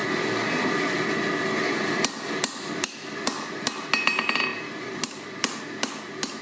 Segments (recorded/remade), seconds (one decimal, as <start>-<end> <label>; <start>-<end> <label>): 0.0-3.6 remade; 3.6-4.5 recorded; 4.5-5.6 remade; 5.6-6.4 recorded